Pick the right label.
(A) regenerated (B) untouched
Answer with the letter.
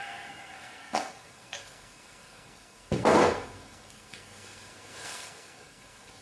A